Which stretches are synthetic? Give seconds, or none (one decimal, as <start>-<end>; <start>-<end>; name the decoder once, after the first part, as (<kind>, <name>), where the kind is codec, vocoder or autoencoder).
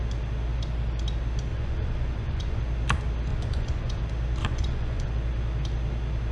1.5-2.6 (vocoder, Vocos); 3.3-4.0; 4.4-5.1